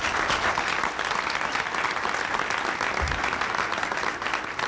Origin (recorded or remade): recorded